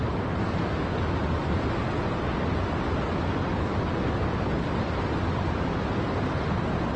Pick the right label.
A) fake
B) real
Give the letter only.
B